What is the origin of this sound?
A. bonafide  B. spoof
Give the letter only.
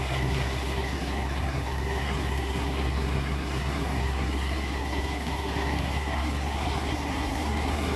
B